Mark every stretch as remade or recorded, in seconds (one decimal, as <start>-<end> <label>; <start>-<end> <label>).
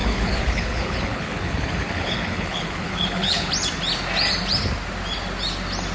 0.0-3.5 remade; 3.5-5.9 recorded